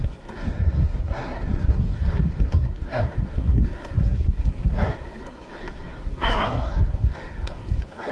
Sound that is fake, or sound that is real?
fake